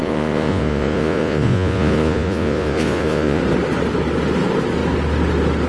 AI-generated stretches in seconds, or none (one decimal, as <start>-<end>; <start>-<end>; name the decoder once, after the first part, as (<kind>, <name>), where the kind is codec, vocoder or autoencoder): 0.0-3.4 (vocoder, Vocos)